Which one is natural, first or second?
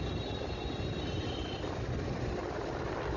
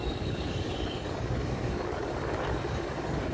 first